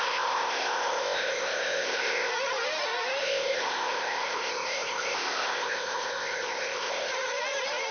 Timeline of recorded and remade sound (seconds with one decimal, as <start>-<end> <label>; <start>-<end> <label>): 0.0-2.3 remade; 2.3-3.2 recorded; 3.2-7.1 remade; 7.1-7.9 recorded